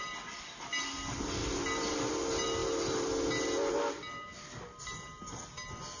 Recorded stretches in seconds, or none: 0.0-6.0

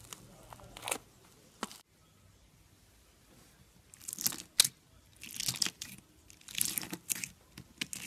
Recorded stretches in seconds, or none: 0.0-8.1

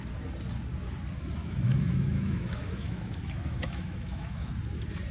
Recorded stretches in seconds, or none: 0.0-1.4; 4.5-5.1

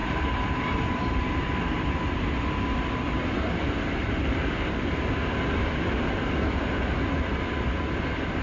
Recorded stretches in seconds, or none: 1.5-4.0; 5.4-8.4

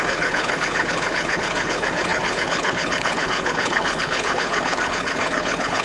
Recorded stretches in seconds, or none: none

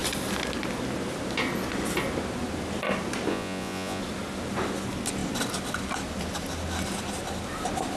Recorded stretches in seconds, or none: 0.0-3.3; 4.0-8.0

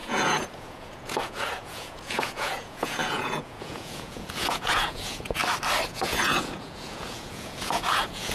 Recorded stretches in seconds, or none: 5.4-5.9

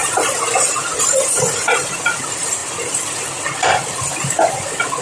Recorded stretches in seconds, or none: 0.0-5.0